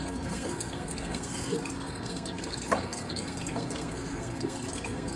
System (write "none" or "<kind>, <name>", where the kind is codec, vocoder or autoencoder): codec, SNAC